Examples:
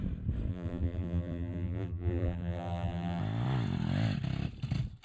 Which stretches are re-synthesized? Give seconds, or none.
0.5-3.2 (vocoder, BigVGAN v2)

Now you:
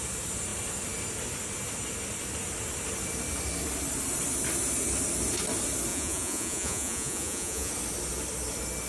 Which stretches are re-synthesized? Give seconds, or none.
5.9-7.7 (vocoder, Vocos)

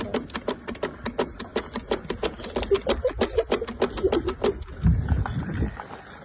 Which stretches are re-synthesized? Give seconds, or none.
none

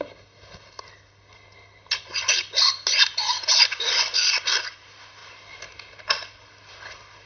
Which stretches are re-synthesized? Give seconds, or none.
none

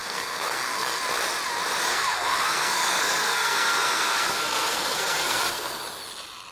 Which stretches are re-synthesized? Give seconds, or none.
0.0-1.0 (codec, SNAC); 1.9-5.8

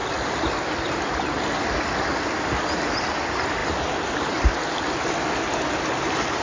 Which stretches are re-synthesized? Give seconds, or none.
3.6-4.5 (vocoder, BigVGAN v2)